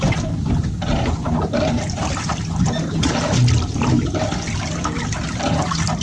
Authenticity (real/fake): real